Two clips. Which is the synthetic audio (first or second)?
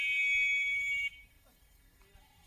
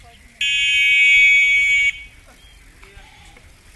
first